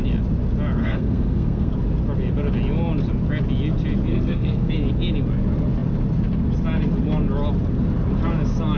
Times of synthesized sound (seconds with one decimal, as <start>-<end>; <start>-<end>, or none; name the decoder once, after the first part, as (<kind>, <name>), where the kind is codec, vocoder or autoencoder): 0.8-1.7 (codec, SNAC); 4.1-4.7